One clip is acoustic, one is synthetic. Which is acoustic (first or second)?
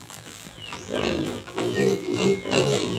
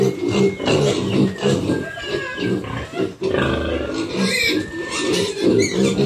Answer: second